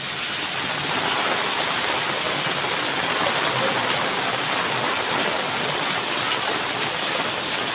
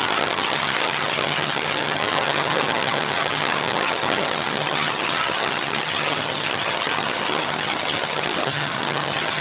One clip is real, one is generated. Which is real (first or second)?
first